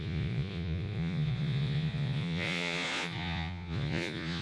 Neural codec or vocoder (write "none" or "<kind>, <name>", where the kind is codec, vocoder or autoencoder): vocoder, Vocos